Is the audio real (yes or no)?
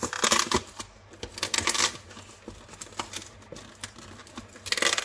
yes